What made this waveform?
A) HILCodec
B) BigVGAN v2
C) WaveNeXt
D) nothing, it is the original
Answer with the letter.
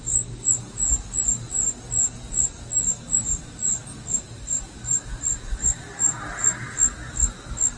D